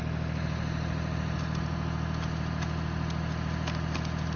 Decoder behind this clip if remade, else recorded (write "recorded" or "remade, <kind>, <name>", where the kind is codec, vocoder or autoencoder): recorded